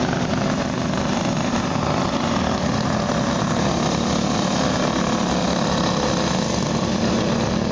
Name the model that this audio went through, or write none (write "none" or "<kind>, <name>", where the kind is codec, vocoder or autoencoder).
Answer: none